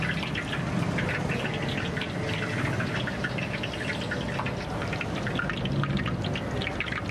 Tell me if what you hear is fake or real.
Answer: real